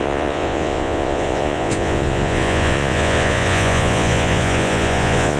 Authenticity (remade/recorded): remade